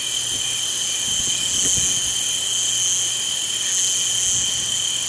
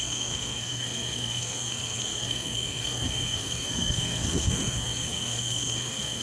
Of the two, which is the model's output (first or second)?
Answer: second